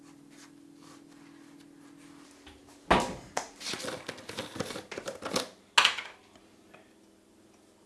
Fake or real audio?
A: real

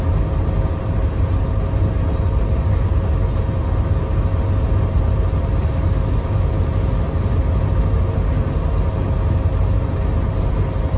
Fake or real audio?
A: real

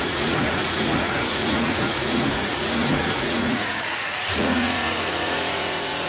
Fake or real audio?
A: fake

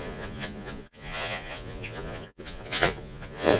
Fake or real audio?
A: fake